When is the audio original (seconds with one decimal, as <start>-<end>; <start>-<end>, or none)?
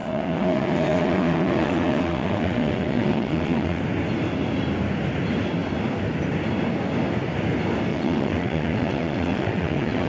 3.8-7.9